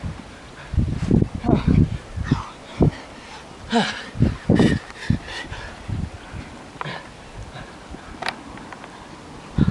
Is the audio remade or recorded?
recorded